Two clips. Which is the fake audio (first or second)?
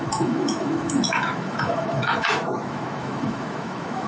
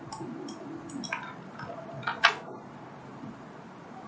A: first